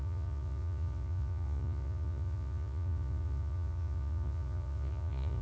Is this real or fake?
fake